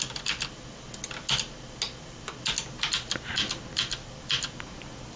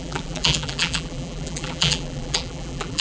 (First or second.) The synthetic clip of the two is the second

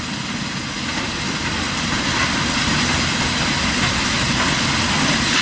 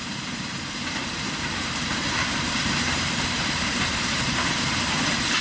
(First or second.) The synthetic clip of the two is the second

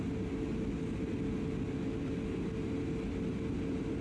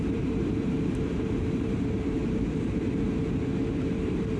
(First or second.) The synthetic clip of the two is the second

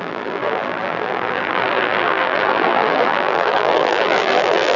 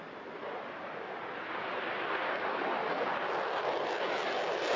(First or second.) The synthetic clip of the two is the first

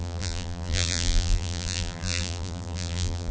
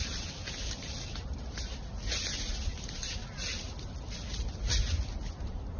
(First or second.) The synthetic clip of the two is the first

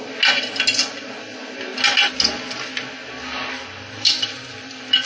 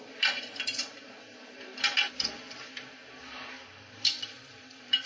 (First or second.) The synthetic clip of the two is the second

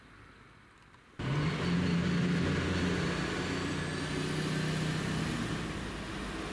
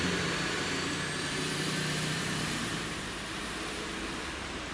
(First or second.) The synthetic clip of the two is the second